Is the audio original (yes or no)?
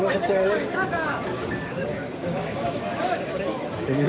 no